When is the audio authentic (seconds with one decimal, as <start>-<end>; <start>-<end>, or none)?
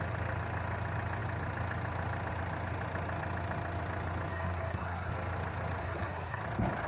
0.0-4.3; 5.1-5.8; 6.4-6.9